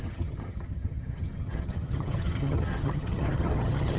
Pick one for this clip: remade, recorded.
remade